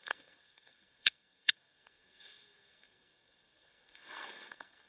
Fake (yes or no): yes